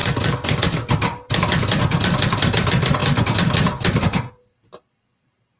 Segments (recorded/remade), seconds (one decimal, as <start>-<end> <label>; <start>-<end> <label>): 0.0-5.6 remade